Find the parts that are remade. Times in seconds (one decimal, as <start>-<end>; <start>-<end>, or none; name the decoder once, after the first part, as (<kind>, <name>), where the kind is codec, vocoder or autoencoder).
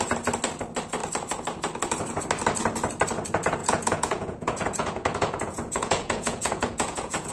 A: 3.6-7.3 (vocoder, Vocos)